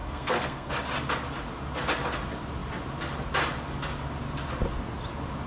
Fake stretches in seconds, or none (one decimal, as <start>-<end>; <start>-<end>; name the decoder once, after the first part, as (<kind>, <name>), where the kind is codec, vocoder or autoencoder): 0.0-0.7 (codec, SNAC)